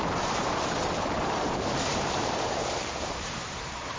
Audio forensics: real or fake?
fake